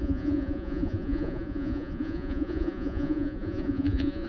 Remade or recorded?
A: remade